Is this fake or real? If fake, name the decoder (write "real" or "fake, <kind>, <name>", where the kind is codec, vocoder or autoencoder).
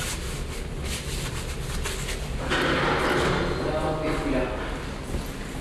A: real